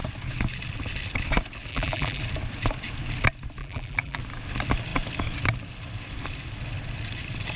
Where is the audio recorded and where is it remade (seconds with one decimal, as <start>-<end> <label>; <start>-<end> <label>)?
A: 0.0-1.7 recorded; 1.7-2.2 remade; 2.2-3.6 recorded; 3.6-4.2 remade; 4.2-7.6 recorded